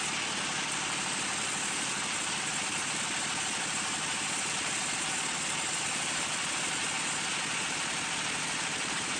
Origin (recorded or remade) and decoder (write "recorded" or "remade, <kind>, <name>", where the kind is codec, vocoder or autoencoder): recorded